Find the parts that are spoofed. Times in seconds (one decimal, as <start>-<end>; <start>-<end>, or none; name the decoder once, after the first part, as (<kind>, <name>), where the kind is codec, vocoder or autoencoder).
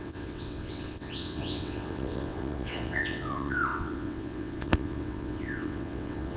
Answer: 0.0-6.4 (vocoder, WaveNeXt)